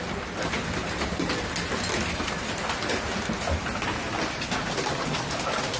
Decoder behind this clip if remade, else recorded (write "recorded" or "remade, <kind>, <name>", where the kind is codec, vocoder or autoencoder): recorded